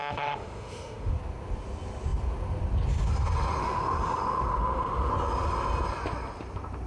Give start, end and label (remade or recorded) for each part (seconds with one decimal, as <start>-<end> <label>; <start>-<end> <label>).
0.0-1.1 remade; 1.1-3.6 recorded; 3.6-5.1 remade; 5.1-6.9 recorded